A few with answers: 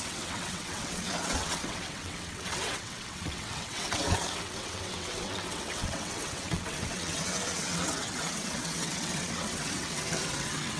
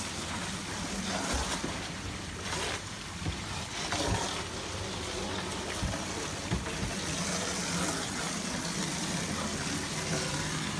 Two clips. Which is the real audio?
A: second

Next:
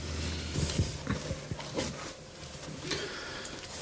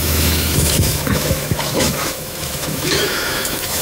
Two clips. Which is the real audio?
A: first